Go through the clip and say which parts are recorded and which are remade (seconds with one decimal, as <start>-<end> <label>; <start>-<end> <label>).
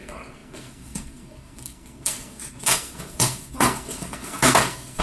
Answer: 0.0-5.0 remade